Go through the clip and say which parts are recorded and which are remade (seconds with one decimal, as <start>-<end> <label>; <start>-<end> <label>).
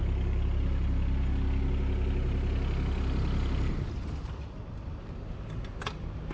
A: 0.0-6.3 recorded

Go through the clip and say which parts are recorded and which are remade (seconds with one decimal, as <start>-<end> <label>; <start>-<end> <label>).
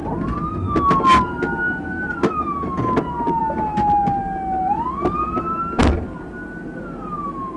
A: 0.0-7.6 recorded